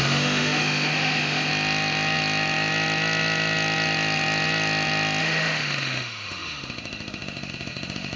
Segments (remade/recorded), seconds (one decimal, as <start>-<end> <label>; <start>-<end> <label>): 0.0-1.5 remade; 1.5-5.2 recorded; 5.2-8.2 remade